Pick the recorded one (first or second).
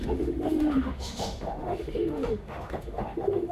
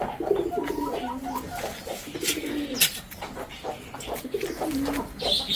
second